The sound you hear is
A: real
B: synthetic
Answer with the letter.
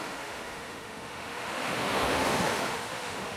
B